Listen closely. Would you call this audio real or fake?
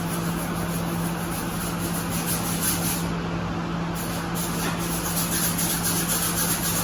real